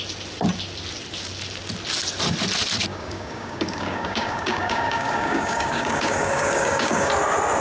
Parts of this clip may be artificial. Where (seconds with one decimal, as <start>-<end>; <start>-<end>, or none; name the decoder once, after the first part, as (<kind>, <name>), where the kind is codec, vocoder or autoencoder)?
2.9-7.1 (codec, DAC)